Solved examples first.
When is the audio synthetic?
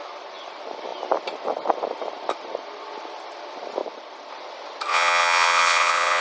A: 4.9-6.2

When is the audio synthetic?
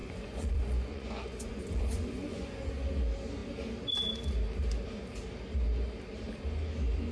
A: 0.0-2.7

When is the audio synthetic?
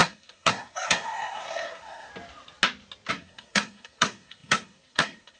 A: 0.0-2.1; 3.1-5.4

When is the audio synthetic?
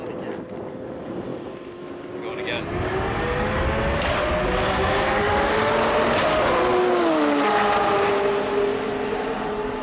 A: 5.2-5.7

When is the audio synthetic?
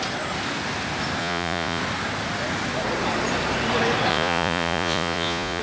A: 1.2-1.8; 4.1-5.6